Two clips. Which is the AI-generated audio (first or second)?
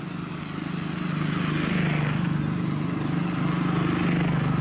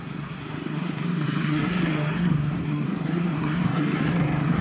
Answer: second